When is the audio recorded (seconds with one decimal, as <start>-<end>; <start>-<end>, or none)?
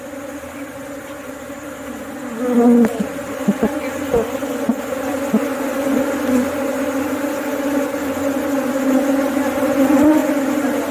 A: 0.0-10.9